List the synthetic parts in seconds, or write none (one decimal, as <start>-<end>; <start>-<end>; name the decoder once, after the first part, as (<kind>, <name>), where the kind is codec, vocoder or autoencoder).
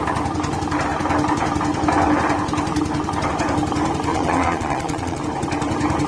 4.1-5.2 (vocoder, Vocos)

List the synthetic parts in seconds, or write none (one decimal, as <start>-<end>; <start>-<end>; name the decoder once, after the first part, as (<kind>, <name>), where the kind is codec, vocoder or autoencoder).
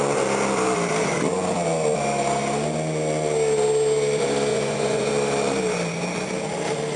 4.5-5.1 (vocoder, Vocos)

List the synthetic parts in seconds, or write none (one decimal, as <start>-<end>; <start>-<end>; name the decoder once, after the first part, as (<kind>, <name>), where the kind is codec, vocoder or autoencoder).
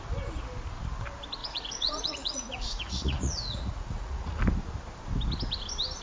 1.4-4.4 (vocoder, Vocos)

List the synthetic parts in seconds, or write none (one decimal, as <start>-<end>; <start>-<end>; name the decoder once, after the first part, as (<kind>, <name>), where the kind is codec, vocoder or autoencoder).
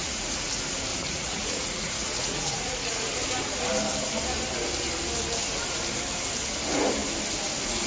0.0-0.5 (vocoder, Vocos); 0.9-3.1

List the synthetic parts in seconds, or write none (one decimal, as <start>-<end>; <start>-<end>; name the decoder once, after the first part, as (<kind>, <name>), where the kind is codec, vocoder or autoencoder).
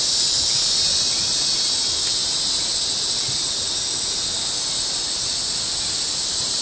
none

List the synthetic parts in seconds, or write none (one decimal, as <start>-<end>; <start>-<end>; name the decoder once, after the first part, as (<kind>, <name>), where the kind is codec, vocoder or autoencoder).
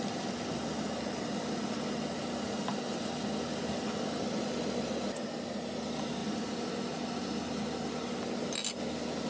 none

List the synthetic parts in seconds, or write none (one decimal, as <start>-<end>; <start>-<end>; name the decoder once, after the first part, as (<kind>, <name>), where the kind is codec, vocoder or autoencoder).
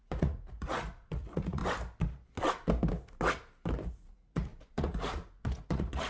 0.0-1.6 (vocoder, Vocos); 3.9-6.1